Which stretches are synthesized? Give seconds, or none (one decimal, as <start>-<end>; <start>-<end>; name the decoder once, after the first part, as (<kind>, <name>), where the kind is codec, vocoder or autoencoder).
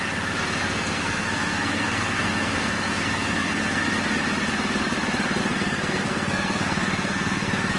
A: 0.6-4.0 (codec, SNAC); 5.4-7.8